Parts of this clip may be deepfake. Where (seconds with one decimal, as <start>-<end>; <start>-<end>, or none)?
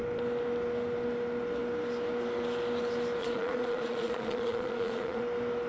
3.2-5.2